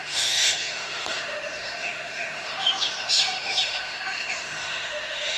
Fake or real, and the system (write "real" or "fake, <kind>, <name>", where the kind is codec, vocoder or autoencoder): fake, autoencoder, DAC-VAE